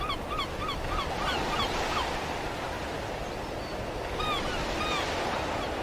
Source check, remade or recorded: recorded